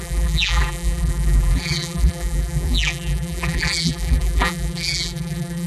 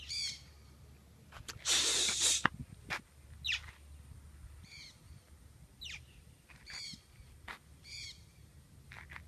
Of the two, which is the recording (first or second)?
second